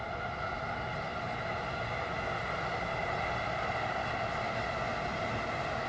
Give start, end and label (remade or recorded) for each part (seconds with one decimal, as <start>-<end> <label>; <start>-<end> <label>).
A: 0.0-5.9 recorded